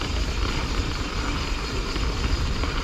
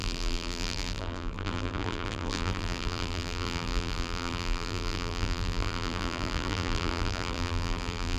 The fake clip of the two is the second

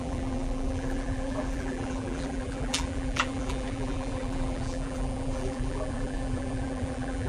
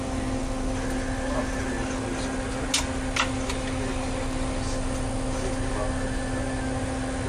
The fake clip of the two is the first